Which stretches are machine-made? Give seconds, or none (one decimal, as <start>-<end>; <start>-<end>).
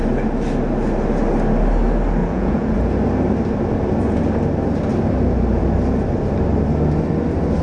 2.2-2.9